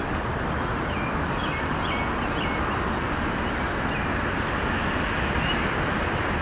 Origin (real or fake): real